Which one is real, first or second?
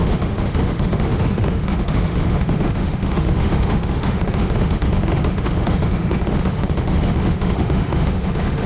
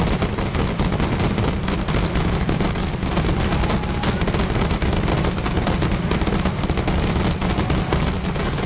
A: second